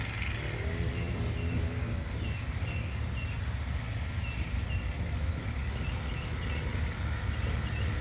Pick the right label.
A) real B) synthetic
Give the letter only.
A